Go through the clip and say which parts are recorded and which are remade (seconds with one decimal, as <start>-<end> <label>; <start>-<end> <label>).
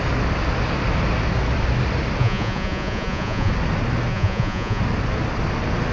0.0-2.2 recorded; 2.2-3.5 remade; 3.5-4.1 recorded; 4.1-4.8 remade; 4.8-5.9 recorded